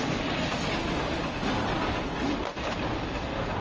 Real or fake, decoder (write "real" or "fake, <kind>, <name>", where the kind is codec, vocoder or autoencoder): real